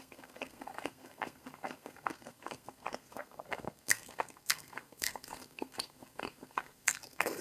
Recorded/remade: remade